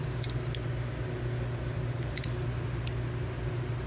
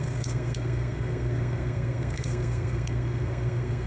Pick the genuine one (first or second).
first